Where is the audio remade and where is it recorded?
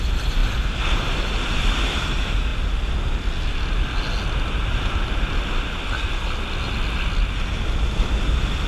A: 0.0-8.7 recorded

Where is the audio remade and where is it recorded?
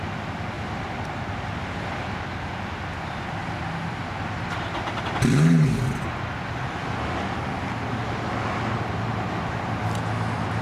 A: 0.0-10.6 recorded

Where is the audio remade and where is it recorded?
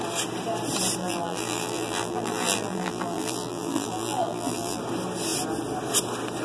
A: 0.0-1.0 recorded; 1.0-4.8 remade; 4.8-6.4 recorded